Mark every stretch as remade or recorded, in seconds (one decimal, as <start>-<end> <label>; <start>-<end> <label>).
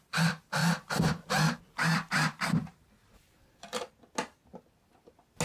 0.0-0.6 recorded; 0.6-3.8 remade; 3.8-5.4 recorded